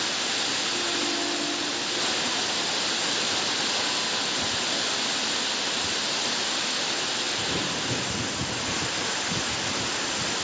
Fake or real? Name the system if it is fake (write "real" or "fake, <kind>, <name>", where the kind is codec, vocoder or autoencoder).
real